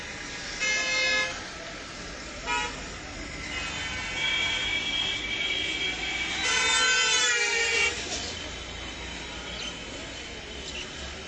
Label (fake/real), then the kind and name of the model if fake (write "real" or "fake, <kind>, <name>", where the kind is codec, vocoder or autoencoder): real